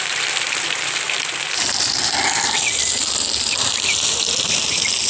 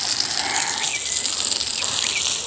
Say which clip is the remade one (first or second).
first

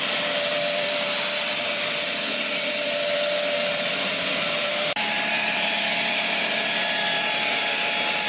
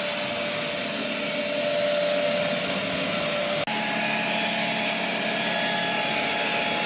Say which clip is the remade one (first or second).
first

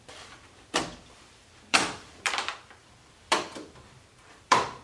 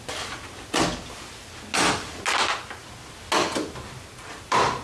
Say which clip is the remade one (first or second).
first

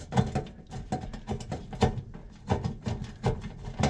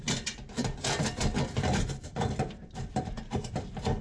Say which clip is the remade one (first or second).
second